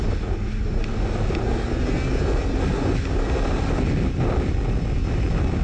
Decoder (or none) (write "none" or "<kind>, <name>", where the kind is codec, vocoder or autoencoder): none